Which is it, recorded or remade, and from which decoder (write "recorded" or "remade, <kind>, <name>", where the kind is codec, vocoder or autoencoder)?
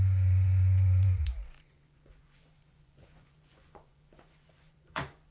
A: remade, vocoder, Vocos